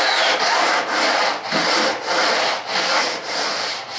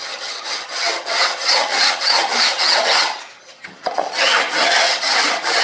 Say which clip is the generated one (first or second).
second